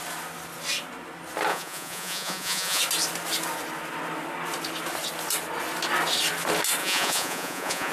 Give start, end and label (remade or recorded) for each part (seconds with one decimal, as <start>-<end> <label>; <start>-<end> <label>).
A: 0.0-1.5 recorded; 1.5-2.8 remade; 2.8-6.8 recorded; 6.8-7.9 remade